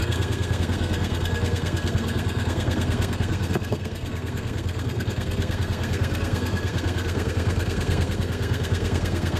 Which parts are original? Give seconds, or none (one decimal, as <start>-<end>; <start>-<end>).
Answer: none